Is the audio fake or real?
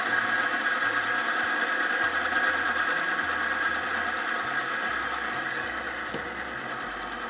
real